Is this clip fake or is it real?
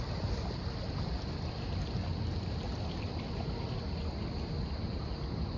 real